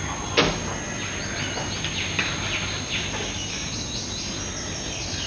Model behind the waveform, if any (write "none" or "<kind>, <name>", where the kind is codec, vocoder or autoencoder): none